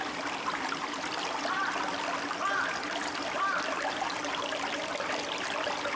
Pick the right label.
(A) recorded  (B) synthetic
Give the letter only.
B